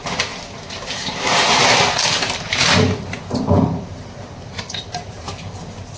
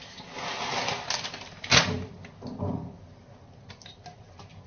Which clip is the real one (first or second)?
second